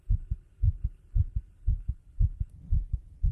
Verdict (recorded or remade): remade